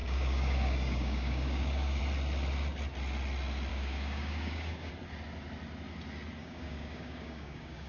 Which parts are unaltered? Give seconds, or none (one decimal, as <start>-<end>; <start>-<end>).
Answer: 2.0-3.7; 4.9-6.4

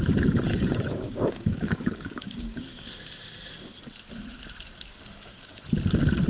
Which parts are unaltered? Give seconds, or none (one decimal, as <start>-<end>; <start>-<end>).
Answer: 0.0-0.5; 2.9-4.9; 5.6-6.3